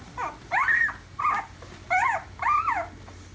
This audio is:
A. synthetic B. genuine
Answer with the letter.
B